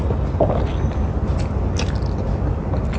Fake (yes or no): no